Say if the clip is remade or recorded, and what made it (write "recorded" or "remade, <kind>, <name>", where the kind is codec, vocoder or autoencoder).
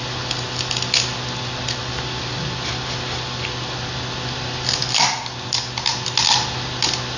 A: recorded